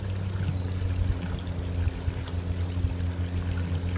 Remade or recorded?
recorded